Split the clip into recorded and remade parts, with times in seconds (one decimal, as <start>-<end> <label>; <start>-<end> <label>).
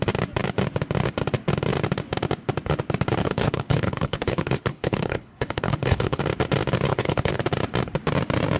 0.0-3.2 recorded; 3.2-6.2 remade; 6.2-6.9 recorded; 6.9-7.4 remade; 7.4-8.6 recorded